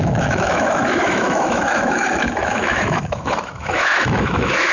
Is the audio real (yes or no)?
no